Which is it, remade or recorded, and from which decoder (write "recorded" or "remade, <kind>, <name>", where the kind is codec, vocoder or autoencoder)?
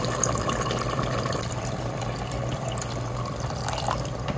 remade, vocoder, BigVGAN v2